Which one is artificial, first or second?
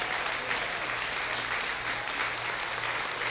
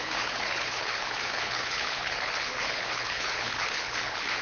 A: second